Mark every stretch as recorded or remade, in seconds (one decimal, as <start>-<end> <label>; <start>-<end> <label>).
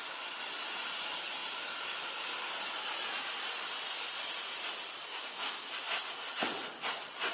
0.0-5.1 recorded; 5.1-5.7 remade; 5.7-7.3 recorded